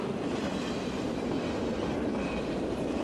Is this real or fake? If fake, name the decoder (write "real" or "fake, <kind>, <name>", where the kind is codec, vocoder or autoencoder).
real